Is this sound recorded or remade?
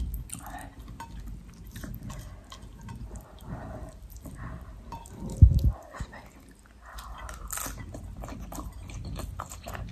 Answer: recorded